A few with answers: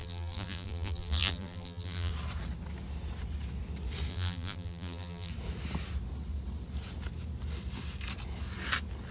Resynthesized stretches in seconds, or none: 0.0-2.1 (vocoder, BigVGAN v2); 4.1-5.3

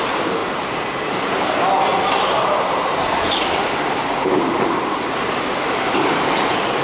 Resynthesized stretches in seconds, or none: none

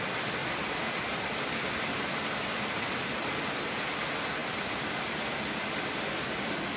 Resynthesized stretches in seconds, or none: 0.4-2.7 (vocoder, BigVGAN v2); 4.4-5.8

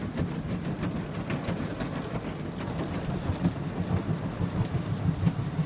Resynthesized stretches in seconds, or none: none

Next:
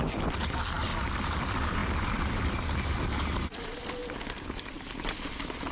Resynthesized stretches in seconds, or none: 0.0-0.9 (vocoder, BigVGAN v2); 1.4-4.0; 4.8-5.7

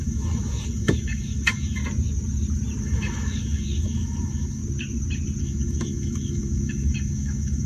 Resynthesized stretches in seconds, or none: 0.0-1.8 (autoencoder, DAC-VAE); 2.8-4.6; 5.4-7.7

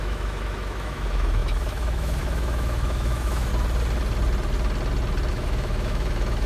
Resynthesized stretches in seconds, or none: 0.0-3.5 (autoencoder, DAC-VAE); 5.3-6.5